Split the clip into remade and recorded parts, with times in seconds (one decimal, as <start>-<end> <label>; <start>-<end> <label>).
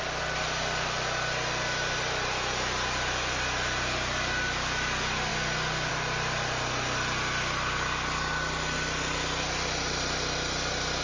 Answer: 0.0-11.0 recorded